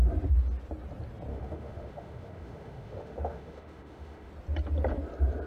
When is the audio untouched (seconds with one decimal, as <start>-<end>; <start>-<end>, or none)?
0.0-1.3; 4.3-5.5